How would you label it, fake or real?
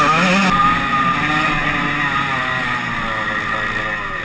real